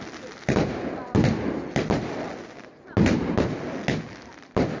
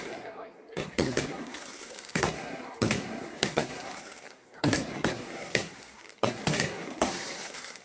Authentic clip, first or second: first